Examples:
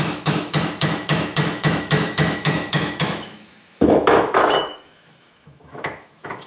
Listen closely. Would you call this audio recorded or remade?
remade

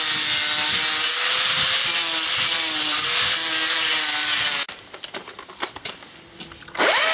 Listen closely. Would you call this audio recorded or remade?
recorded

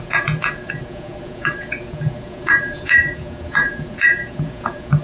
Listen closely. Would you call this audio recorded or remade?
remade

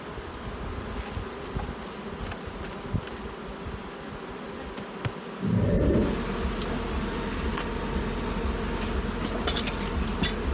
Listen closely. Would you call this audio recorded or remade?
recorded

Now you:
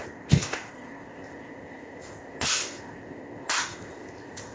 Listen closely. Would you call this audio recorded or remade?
remade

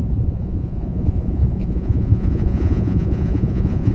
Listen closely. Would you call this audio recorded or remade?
remade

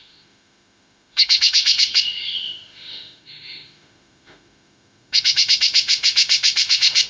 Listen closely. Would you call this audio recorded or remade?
remade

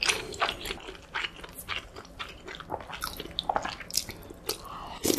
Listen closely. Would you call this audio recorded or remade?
recorded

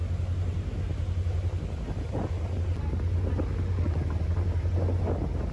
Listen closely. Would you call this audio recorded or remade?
recorded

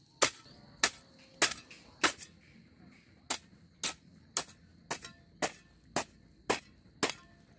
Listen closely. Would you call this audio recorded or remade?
recorded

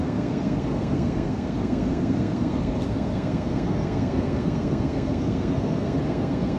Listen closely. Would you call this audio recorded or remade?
remade